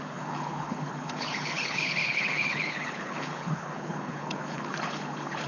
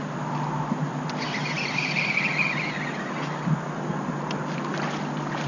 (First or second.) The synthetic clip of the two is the first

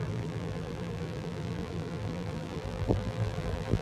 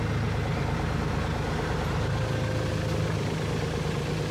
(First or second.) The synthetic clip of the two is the first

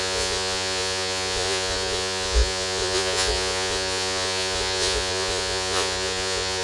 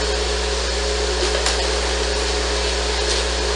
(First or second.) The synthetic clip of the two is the first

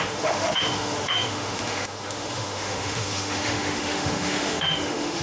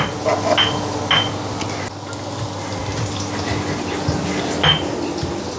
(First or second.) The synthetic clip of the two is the first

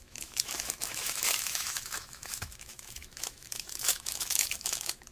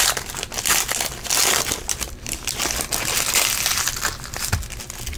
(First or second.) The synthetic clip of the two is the first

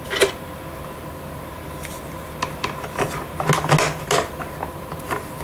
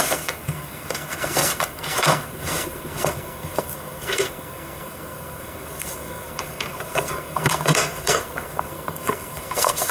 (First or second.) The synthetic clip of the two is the second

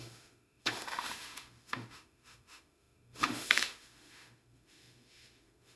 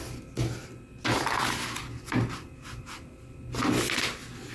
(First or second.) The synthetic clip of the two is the first